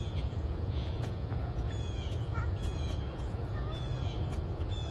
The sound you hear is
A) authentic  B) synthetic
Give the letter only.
B